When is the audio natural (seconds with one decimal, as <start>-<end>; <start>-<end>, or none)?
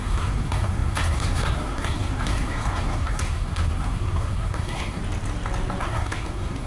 5.0-5.8